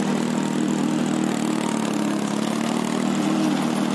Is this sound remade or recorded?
recorded